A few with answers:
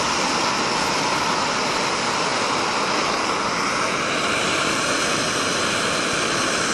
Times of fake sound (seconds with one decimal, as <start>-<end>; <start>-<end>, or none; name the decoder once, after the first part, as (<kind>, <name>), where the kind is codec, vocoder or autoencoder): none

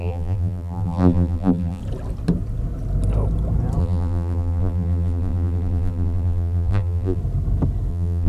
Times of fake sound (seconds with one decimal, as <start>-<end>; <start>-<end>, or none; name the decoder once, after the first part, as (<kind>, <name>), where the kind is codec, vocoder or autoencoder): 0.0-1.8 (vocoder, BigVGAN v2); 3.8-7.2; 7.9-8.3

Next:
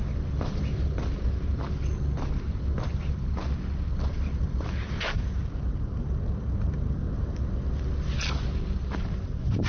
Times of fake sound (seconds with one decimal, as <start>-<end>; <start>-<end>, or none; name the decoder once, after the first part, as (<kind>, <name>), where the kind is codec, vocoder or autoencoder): 0.0-1.5 (vocoder, BigVGAN v2); 4.1-5.4; 8.8-9.7

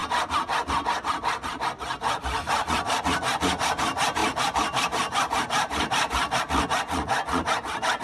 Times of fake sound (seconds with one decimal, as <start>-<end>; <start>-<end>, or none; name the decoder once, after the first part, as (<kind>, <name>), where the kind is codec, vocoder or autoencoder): 4.2-6.4 (vocoder, BigVGAN v2)

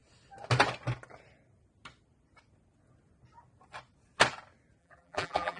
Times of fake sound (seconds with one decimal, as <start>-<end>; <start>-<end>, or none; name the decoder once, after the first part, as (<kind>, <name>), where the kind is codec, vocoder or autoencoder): 4.8-5.6 (vocoder, BigVGAN v2)

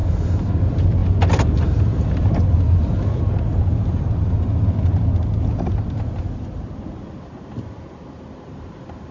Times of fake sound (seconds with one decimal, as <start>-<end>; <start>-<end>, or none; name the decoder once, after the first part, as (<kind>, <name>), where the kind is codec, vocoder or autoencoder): 0.0-0.6 (vocoder, BigVGAN v2)